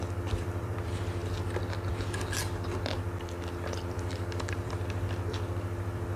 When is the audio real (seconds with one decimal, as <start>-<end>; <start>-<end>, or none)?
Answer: 1.2-3.9